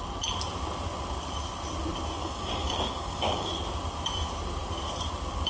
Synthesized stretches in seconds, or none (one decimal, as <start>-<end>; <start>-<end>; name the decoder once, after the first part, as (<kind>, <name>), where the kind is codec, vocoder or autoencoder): 2.2-3.5 (codec, DAC)